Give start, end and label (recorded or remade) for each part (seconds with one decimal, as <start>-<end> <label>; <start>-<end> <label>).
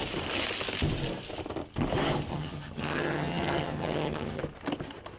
0.0-2.3 recorded; 2.3-4.4 remade; 4.4-5.2 recorded